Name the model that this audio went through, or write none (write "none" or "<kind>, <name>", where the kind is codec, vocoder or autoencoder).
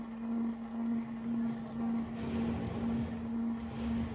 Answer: none